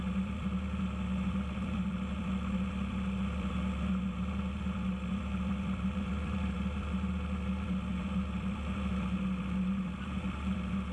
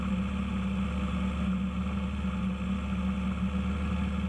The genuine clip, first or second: second